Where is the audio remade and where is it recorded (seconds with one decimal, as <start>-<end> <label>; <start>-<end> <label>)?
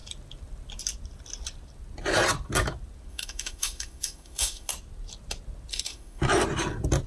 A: 0.0-3.1 recorded; 3.1-4.7 remade; 4.7-5.7 recorded; 5.7-6.2 remade; 6.2-7.1 recorded